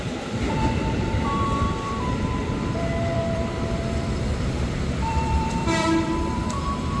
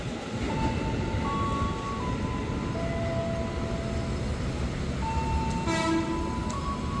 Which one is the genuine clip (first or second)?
second